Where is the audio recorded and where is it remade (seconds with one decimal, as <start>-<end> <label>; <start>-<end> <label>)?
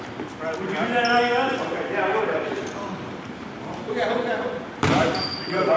0.0-2.1 recorded; 2.1-5.8 remade